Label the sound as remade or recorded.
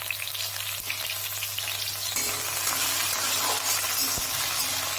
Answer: recorded